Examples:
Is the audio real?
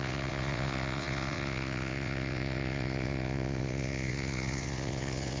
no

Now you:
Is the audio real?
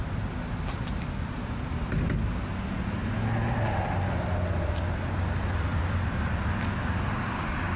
yes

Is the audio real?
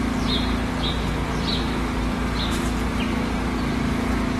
yes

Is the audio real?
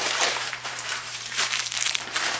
no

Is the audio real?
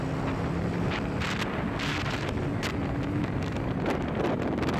yes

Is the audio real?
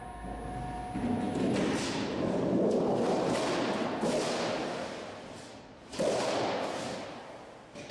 yes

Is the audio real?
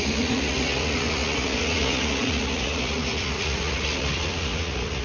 no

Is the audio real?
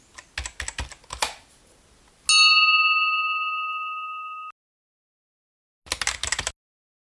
yes